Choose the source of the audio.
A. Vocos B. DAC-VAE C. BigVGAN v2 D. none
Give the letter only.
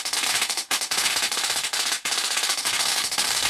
B